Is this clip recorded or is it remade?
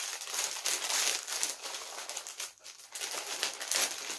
recorded